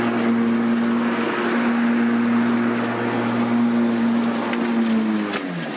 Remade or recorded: recorded